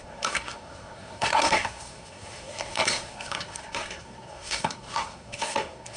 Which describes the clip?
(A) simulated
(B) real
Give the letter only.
A